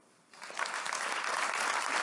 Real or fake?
fake